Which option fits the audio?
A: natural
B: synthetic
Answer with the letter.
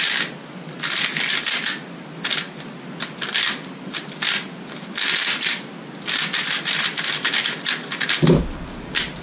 A